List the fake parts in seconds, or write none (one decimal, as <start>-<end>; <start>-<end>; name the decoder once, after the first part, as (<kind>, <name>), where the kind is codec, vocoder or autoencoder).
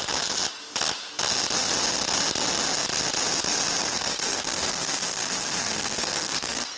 3.9-6.8 (codec, SNAC)